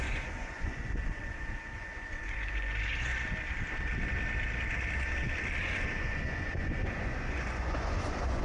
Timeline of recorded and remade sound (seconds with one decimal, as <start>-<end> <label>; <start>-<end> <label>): 0.0-3.1 remade; 3.1-5.6 recorded; 5.6-8.4 remade